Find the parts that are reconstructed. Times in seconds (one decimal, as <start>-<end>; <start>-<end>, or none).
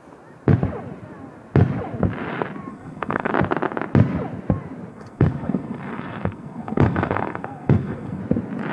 2.7-3.3; 4.9-8.2